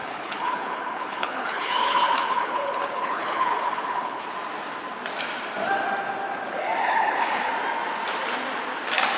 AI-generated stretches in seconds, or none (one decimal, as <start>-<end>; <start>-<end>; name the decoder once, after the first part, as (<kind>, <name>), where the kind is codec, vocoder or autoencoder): 0.0-4.3 (codec, HILCodec); 6.8-7.5